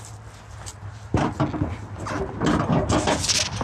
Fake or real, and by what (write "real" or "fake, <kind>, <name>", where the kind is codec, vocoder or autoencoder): real